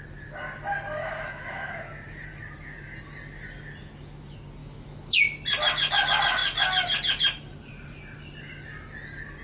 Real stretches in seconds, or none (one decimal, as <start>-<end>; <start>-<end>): 0.0-1.0; 1.9-4.6; 5.2-9.4